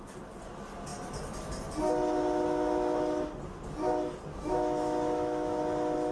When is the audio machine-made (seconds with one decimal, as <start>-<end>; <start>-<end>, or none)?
4.3-5.6